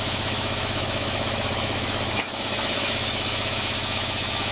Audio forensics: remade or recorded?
remade